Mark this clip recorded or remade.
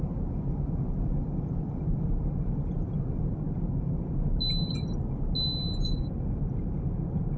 recorded